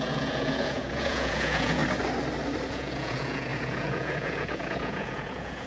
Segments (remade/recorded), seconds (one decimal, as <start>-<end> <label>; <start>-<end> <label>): 0.0-1.8 remade; 1.8-2.7 recorded; 2.7-5.7 remade